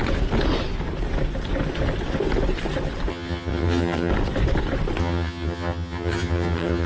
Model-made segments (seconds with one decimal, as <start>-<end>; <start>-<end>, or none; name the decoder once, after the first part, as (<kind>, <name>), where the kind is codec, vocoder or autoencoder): 3.1-4.1 (vocoder, HiFi-GAN); 5.0-6.9